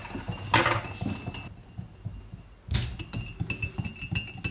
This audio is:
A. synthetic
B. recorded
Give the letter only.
B